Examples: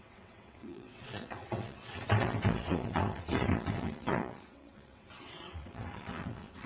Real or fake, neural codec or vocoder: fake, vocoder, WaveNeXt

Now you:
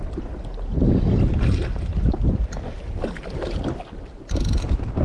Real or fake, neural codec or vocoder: real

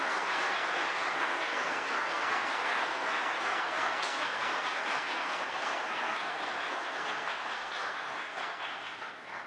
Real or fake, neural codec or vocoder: fake, codec, SNAC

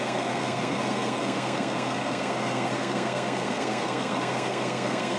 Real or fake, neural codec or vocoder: fake, codec, SNAC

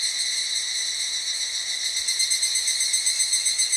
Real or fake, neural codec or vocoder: real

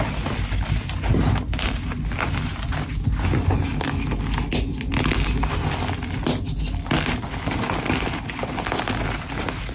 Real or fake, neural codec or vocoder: real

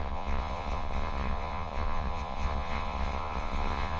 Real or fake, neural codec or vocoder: fake, vocoder, Vocos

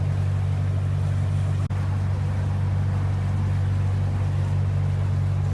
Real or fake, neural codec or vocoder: real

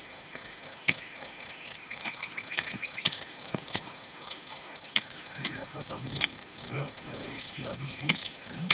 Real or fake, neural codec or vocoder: fake, autoencoder, DAC-VAE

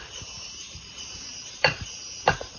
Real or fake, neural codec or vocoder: fake, vocoder, BigVGAN v2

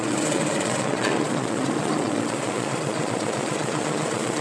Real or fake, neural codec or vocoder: fake, vocoder, Vocos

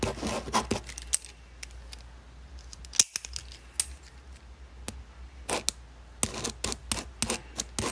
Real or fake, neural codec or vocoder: real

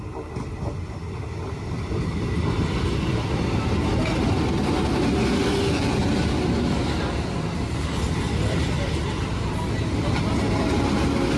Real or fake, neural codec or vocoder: real